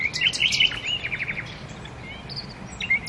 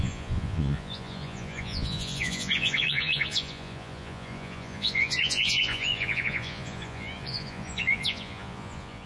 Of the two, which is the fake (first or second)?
second